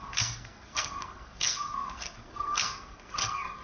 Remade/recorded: remade